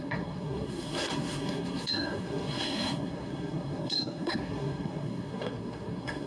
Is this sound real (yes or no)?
no